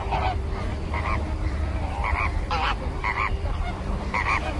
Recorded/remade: remade